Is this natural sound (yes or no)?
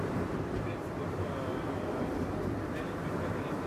no